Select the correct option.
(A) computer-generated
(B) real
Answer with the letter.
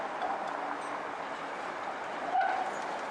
B